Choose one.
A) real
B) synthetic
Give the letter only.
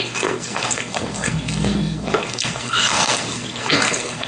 B